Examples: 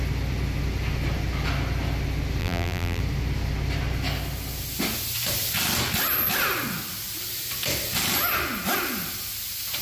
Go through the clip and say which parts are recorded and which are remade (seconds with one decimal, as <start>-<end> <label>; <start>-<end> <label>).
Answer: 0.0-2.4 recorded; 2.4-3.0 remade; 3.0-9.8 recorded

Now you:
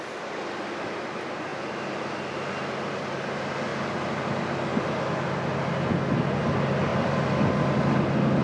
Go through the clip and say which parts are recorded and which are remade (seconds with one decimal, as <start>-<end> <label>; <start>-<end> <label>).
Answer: 0.0-6.9 recorded; 6.9-7.8 remade; 7.8-8.4 recorded

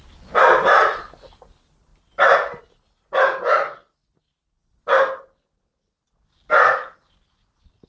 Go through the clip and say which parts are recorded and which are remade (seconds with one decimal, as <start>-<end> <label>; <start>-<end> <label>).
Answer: 0.0-1.9 recorded; 1.9-2.6 remade; 2.6-7.9 recorded